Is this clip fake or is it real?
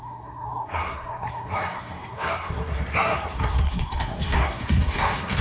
fake